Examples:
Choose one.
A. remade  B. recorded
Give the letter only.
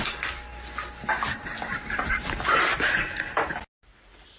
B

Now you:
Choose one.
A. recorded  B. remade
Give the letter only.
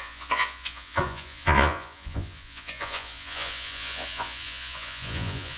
B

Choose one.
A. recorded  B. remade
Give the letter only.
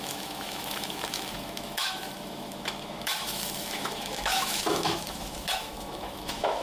B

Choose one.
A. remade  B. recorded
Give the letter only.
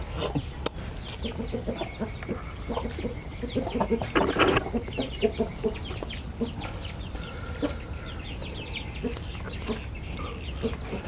B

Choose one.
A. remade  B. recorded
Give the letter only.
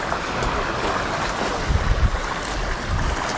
B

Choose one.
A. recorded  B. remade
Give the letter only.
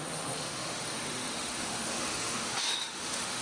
B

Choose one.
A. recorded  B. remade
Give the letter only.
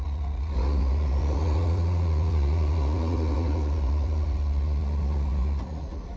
B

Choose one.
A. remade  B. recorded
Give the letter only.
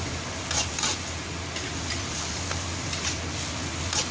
B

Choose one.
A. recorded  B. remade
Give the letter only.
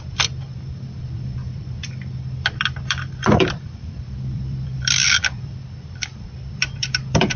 B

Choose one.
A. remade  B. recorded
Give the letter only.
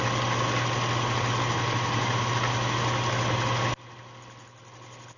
B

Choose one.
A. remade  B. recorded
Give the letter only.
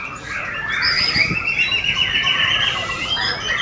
B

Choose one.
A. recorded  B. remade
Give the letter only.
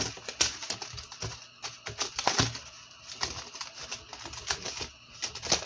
A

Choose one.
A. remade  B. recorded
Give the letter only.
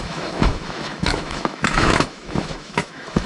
A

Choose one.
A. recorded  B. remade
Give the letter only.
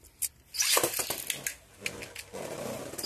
A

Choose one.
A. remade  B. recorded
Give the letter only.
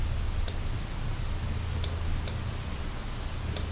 B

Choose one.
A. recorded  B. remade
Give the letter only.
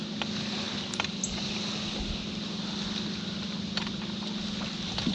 A